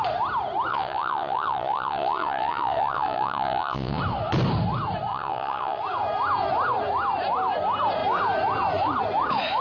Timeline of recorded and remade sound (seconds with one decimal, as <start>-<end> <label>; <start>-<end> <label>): 0.0-0.7 recorded; 0.7-4.0 remade; 4.0-5.1 recorded; 5.1-5.8 remade; 5.8-9.6 recorded